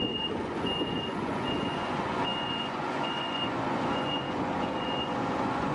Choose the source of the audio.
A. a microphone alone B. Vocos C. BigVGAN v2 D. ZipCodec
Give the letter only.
B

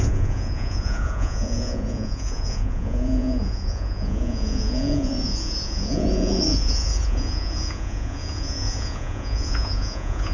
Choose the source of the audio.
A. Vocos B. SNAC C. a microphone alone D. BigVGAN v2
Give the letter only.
A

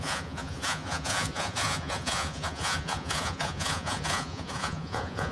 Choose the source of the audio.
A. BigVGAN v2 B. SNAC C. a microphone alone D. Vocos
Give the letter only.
D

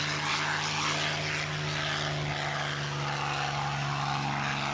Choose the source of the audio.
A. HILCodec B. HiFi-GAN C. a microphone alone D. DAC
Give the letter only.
C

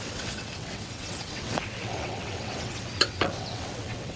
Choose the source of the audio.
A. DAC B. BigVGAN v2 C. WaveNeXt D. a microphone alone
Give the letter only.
C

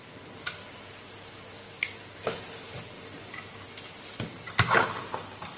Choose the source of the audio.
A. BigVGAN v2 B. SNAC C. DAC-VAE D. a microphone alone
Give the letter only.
D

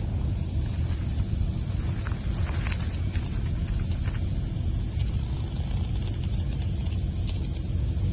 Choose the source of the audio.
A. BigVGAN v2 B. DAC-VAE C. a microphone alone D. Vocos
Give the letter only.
C